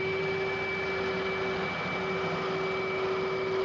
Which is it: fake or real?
real